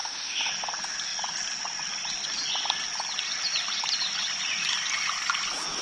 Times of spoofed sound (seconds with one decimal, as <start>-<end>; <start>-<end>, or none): 0.0-0.5